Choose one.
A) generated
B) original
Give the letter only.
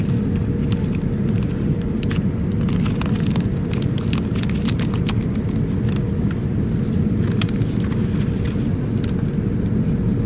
B